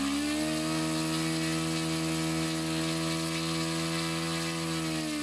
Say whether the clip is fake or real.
real